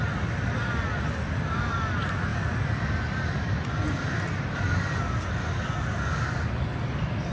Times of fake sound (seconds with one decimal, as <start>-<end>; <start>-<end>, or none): 2.3-5.0